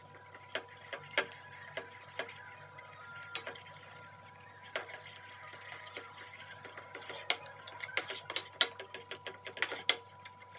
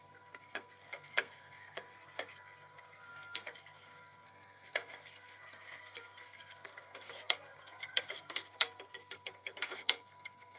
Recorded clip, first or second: first